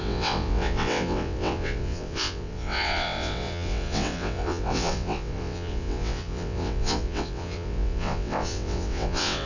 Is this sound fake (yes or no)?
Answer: yes